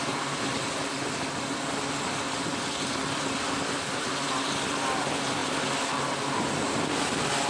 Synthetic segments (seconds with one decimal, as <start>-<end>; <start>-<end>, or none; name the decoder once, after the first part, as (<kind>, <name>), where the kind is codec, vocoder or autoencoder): none